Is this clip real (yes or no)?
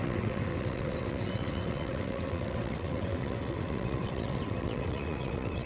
no